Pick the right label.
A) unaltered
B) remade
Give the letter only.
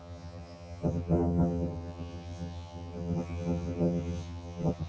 B